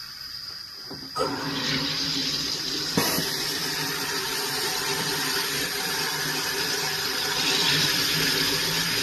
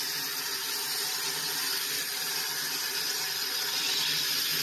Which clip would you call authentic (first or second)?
second